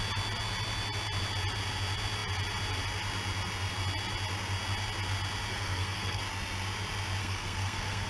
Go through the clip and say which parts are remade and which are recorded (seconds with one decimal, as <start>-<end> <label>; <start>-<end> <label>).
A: 0.0-5.5 recorded; 5.5-6.2 remade; 6.2-7.2 recorded; 7.2-8.1 remade